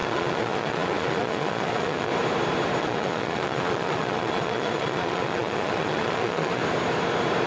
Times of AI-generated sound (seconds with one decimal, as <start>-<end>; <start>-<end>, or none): 0.0-2.1; 2.8-6.6